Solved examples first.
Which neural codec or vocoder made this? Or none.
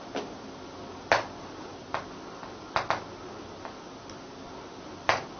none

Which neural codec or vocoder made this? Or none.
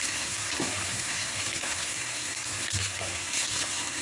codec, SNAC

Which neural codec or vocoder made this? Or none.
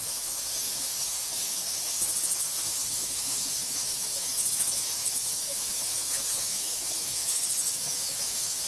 autoencoder, DAC-VAE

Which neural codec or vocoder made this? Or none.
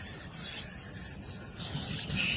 none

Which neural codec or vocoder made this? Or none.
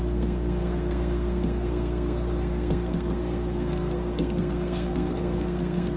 codec, SNAC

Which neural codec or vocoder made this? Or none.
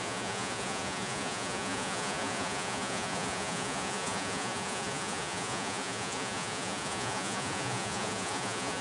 vocoder, Vocos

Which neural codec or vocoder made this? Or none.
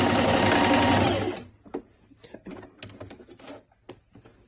none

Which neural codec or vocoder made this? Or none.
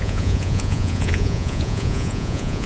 vocoder, Vocos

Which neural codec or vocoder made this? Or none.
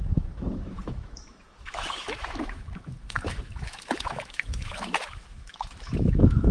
autoencoder, DAC-VAE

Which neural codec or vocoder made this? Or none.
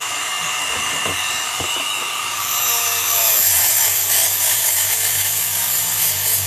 codec, DAC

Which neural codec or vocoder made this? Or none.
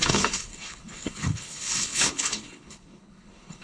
codec, HILCodec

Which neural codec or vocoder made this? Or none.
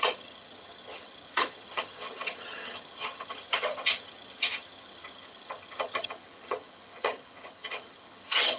vocoder, HiFi-GAN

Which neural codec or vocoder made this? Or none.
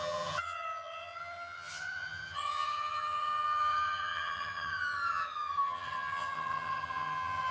vocoder, HiFi-GAN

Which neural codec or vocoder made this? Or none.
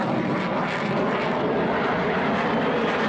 none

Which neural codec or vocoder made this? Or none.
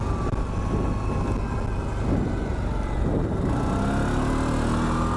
none